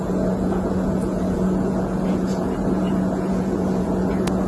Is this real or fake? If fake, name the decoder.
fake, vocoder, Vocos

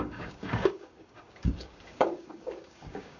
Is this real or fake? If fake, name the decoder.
fake, codec, DAC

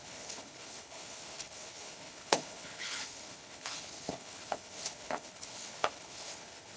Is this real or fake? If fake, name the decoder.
fake, codec, HILCodec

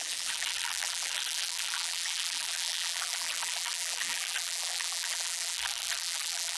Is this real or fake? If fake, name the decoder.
fake, vocoder, BigVGAN v2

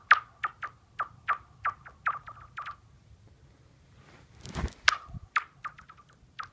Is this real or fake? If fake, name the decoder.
real